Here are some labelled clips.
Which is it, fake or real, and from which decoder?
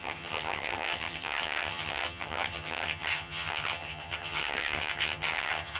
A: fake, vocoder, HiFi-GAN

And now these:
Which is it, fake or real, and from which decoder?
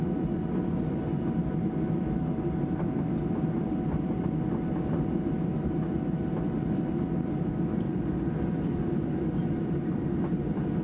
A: real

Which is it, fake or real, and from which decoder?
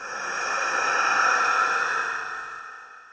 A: real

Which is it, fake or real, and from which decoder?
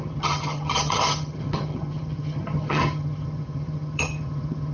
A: fake, vocoder, HiFi-GAN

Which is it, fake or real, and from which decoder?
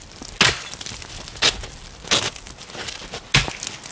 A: real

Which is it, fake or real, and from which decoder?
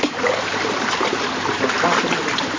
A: real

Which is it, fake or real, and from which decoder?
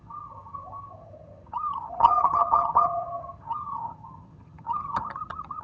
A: fake, vocoder, HiFi-GAN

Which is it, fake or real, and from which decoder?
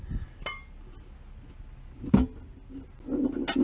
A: real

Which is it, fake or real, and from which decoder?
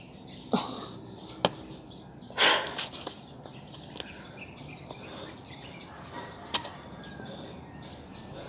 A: real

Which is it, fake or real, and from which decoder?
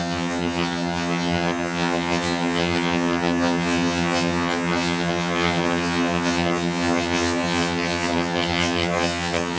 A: fake, vocoder, HiFi-GAN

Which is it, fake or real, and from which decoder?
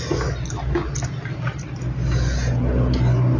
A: real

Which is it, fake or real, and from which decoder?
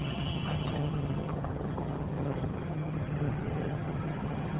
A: fake, vocoder, HiFi-GAN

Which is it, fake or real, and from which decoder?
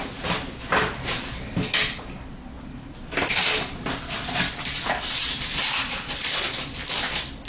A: real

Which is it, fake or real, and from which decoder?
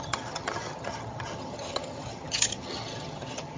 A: fake, vocoder, HiFi-GAN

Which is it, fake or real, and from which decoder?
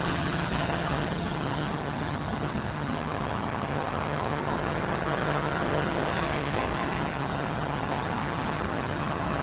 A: fake, vocoder, HiFi-GAN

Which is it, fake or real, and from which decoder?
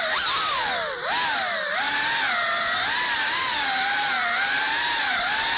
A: real